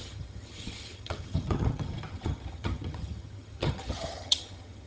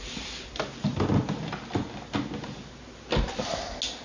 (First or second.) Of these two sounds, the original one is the second